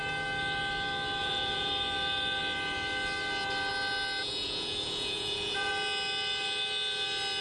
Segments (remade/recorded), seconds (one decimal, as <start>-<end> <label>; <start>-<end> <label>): 0.0-1.2 recorded; 1.2-1.7 remade; 1.7-4.2 recorded; 4.2-5.7 remade; 5.7-7.4 recorded